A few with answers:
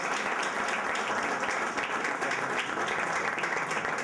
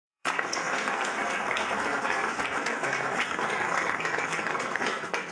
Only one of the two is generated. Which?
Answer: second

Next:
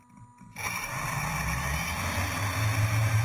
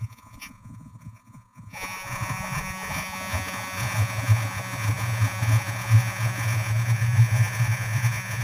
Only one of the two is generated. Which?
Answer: second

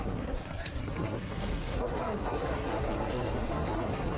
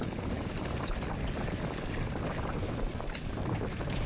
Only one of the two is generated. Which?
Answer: first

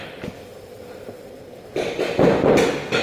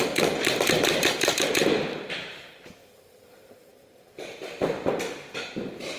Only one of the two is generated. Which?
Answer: second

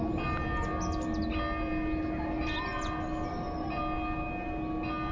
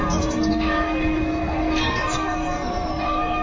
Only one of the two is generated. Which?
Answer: second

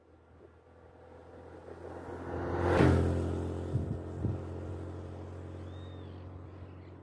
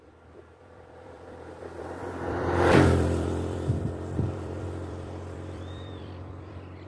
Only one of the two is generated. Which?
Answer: second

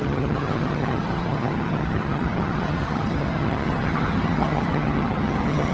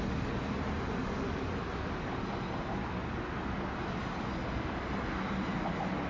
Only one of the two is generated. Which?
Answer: first